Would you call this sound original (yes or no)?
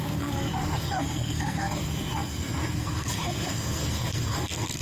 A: no